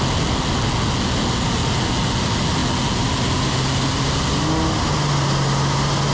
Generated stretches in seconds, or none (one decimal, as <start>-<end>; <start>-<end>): none